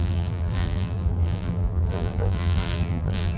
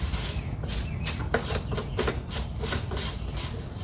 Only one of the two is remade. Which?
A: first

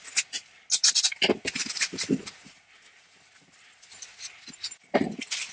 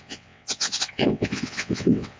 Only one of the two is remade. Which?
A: second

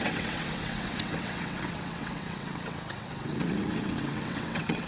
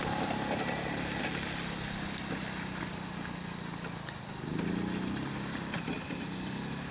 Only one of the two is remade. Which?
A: first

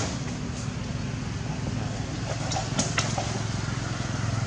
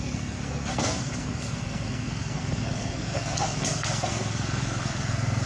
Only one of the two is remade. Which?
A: second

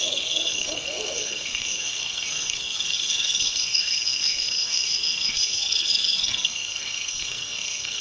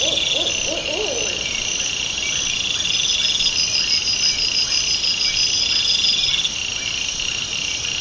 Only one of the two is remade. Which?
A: first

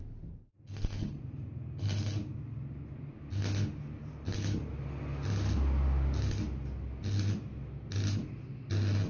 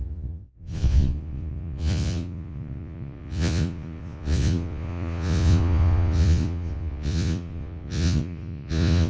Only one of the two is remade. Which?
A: second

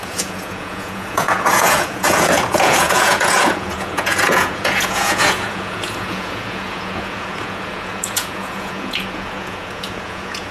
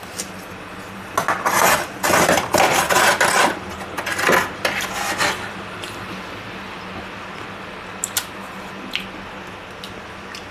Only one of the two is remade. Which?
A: first